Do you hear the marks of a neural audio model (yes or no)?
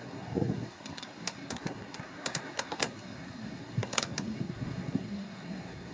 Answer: yes